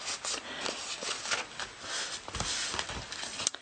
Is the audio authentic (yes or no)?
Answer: yes